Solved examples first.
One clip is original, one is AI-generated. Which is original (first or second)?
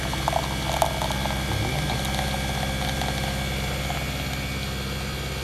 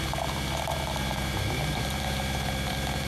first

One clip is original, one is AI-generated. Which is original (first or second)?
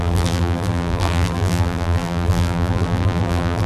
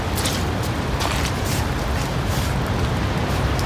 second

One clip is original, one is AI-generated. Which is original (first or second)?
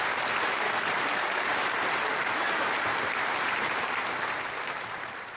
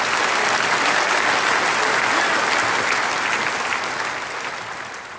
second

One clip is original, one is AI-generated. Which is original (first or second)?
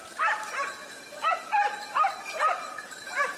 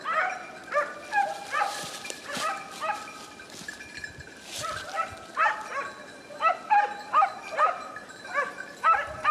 second